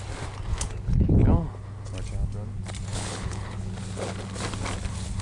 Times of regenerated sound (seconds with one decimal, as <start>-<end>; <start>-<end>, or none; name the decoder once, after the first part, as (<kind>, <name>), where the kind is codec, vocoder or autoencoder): 0.5-1.1 (codec, HILCodec); 2.9-3.7